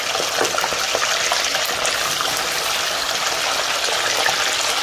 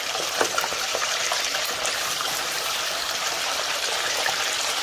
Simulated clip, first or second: second